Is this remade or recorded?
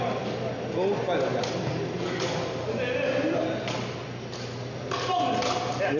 recorded